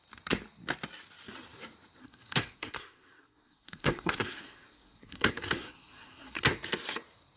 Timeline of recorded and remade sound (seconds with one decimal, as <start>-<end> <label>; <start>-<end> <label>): 0.0-2.0 recorded; 2.0-6.4 remade; 6.4-7.4 recorded